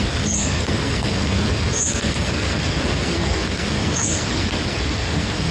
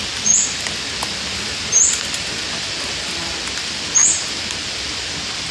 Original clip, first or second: second